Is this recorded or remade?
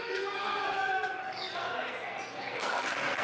remade